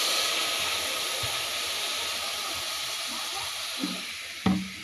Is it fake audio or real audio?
real